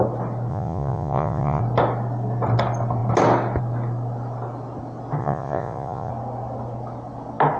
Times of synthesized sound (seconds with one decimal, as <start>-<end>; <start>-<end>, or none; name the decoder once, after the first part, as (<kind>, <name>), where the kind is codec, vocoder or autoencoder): 0.5-1.6 (vocoder, Vocos); 5.2-6.1